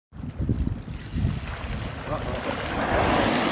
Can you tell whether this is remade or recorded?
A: recorded